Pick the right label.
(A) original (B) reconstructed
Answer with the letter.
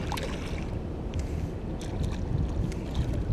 A